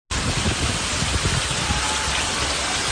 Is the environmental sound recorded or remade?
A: recorded